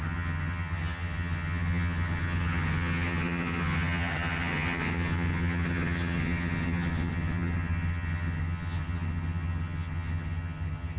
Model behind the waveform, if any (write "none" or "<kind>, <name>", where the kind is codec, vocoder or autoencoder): vocoder, HiFi-GAN